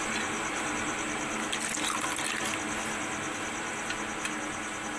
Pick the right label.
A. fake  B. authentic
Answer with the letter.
B